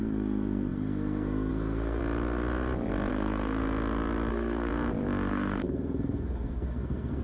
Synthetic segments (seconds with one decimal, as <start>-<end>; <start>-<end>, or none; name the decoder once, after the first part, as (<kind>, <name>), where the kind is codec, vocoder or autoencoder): 0.0-2.0 (codec, SNAC); 3.1-3.6; 4.3-4.7; 5.3-7.2